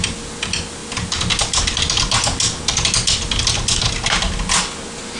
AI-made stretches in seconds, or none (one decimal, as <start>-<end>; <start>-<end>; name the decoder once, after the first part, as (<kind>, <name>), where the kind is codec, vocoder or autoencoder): none